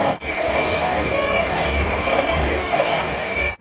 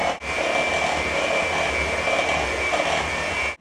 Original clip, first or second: second